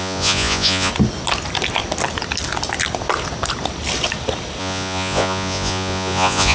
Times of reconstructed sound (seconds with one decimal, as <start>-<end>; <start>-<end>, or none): 0.0-0.9; 4.6-6.5